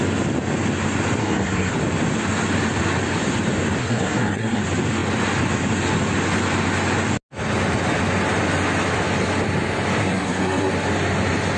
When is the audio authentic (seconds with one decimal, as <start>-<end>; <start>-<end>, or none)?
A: 0.0-1.2; 1.7-3.8; 4.6-10.0; 10.7-11.6